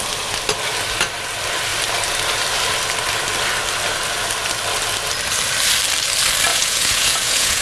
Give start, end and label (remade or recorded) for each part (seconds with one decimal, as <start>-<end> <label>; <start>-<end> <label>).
0.0-6.5 recorded; 6.5-7.6 remade